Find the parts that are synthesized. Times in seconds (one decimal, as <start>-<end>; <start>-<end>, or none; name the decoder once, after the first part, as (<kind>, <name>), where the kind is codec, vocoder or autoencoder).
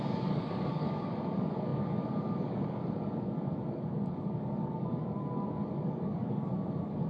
0.0-7.1 (codec, DAC)